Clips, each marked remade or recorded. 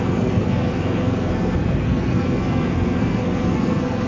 remade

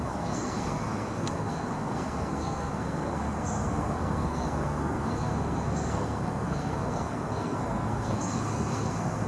remade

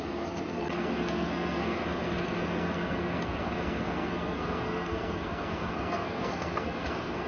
remade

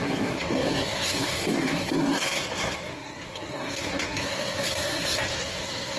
remade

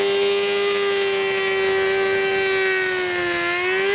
recorded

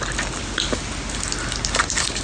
recorded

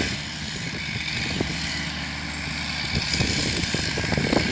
recorded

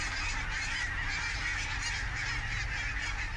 recorded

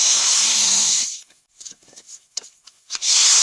remade